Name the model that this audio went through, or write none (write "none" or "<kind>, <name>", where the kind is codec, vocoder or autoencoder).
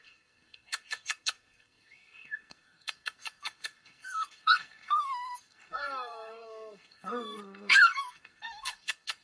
codec, SNAC